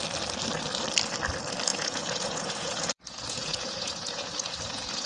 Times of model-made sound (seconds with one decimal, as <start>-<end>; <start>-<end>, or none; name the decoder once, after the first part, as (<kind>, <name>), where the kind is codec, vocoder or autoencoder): 1.7-5.1 (vocoder, Vocos)